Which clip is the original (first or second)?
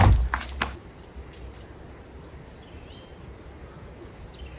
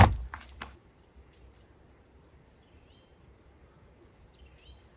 first